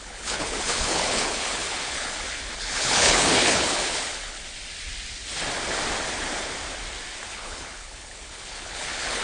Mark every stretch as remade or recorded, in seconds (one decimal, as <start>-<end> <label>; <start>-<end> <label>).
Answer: 0.0-4.4 remade; 4.4-7.3 recorded; 7.3-9.2 remade

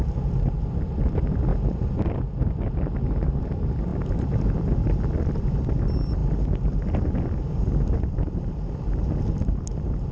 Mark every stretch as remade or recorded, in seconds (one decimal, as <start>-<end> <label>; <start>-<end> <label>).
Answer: 0.0-1.5 remade; 1.5-3.4 recorded; 3.4-6.2 remade; 6.2-8.0 recorded; 8.0-10.1 remade

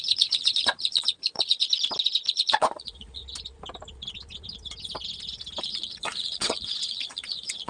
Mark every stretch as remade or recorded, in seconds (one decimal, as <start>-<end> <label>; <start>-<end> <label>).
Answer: 0.0-1.7 remade; 1.7-2.3 recorded; 2.3-3.2 remade; 3.2-5.6 recorded; 5.6-7.7 remade

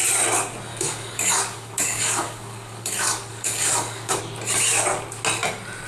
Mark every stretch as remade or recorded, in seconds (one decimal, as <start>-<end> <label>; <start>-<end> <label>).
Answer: 0.0-0.7 recorded; 0.7-4.2 remade; 4.2-5.9 recorded

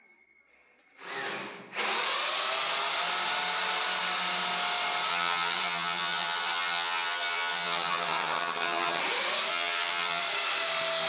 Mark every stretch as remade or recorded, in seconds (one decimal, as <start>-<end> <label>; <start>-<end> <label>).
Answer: 0.0-5.1 recorded; 5.1-9.0 remade; 9.0-9.5 recorded; 9.5-10.2 remade; 10.2-11.1 recorded

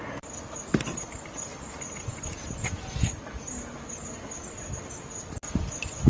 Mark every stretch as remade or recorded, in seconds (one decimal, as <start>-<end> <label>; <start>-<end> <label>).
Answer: 0.0-6.1 recorded

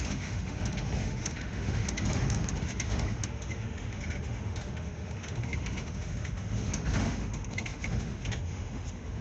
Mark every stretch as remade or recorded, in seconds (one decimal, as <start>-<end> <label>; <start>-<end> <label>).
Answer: 0.0-9.2 remade

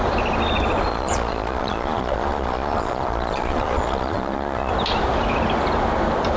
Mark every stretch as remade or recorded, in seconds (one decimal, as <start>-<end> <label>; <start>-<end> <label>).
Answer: 0.0-0.9 recorded; 0.9-4.7 remade; 4.7-6.4 recorded